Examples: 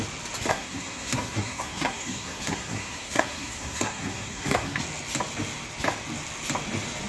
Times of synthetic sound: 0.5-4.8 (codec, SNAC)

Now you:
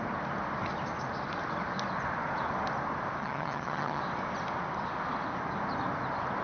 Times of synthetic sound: 3.2-4.0 (vocoder, HiFi-GAN)